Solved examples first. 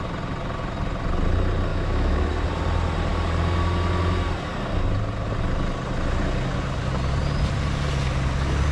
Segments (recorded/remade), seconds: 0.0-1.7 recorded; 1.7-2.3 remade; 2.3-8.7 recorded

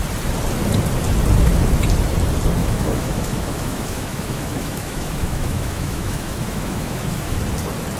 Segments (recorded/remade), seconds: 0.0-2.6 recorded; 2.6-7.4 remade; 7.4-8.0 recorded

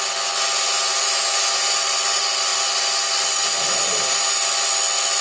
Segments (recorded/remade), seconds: 0.0-0.9 recorded; 0.9-1.5 remade; 1.5-5.2 recorded

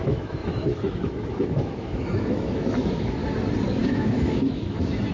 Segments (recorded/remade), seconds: 0.0-3.2 remade; 3.2-3.8 recorded; 3.8-5.1 remade

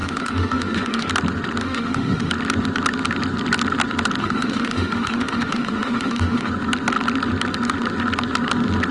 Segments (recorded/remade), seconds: 0.0-1.1 remade; 1.1-1.6 recorded; 1.6-2.3 remade; 2.3-4.2 recorded; 4.2-6.5 remade; 6.5-8.9 recorded

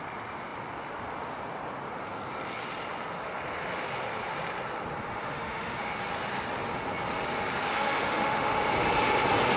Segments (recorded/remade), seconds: 0.0-5.0 recorded; 5.0-5.9 remade; 5.9-7.7 recorded; 7.7-8.7 remade; 8.7-9.6 recorded

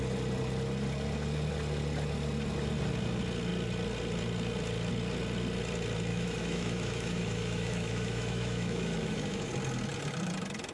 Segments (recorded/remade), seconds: 0.0-6.1 recorded; 6.1-9.5 remade; 9.5-10.7 recorded